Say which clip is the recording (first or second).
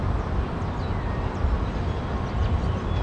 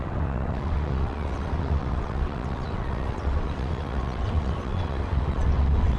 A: first